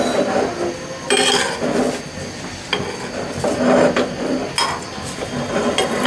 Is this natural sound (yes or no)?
yes